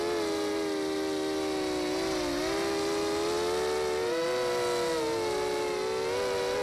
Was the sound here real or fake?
real